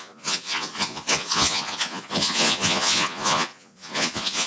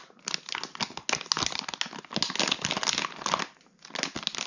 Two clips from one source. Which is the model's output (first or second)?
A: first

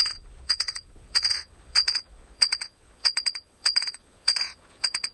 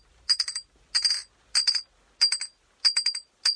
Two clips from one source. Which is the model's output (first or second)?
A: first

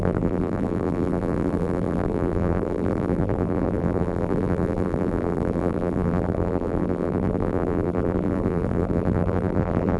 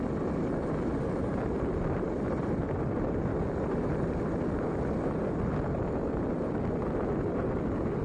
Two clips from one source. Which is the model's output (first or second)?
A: first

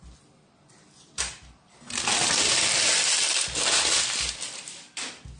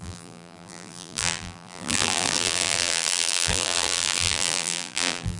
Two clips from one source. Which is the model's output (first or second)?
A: second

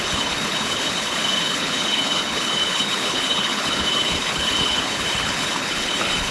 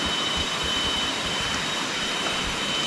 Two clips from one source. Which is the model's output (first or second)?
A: first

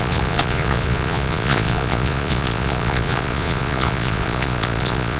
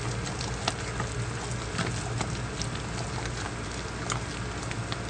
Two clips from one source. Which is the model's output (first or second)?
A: first